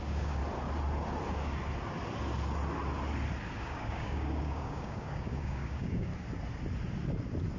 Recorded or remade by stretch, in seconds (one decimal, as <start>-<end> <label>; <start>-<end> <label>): 0.0-0.4 remade; 0.4-3.6 recorded; 3.6-6.1 remade; 6.1-7.6 recorded